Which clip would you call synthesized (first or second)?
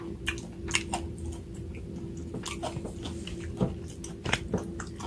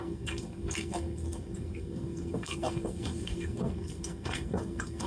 second